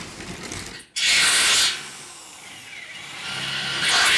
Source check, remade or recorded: recorded